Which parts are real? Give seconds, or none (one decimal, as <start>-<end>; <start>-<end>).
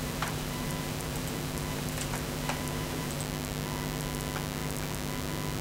3.2-5.6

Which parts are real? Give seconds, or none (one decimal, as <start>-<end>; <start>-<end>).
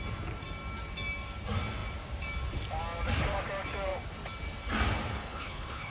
0.0-5.1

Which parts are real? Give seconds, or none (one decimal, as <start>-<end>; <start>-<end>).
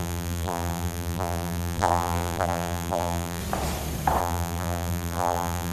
3.4-4.2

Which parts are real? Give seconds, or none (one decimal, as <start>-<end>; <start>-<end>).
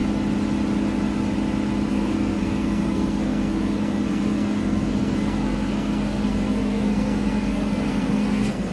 0.0-1.9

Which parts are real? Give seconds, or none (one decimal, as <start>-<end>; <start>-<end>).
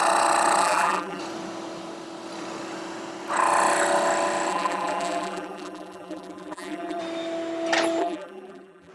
0.0-0.6; 1.2-4.5; 7.0-8.0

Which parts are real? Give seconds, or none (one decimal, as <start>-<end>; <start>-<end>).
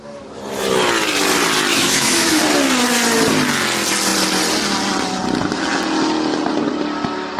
0.0-1.7; 2.4-7.4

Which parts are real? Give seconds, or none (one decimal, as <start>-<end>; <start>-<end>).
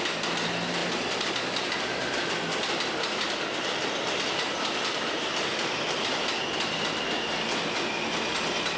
0.0-8.8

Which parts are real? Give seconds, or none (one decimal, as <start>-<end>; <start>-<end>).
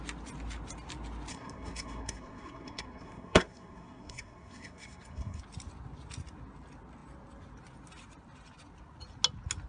0.0-1.3; 5.4-9.7